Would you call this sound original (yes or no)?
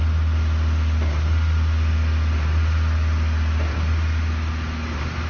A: yes